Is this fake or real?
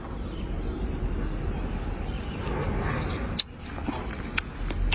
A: real